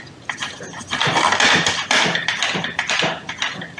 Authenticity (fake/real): real